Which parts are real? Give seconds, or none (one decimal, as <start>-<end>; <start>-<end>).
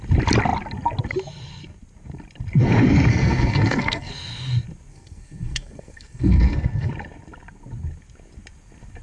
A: 0.0-3.1; 4.1-4.9; 6.9-9.0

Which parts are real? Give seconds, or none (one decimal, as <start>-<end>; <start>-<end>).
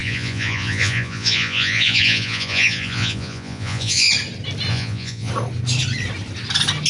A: 4.1-4.7; 5.3-6.9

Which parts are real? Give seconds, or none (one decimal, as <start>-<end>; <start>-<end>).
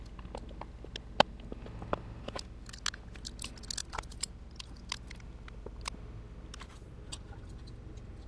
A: 0.0-3.8; 4.8-8.3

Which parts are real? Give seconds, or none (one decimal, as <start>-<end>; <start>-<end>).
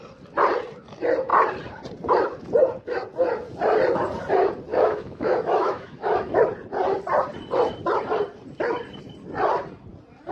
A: 0.0-4.7; 6.4-10.3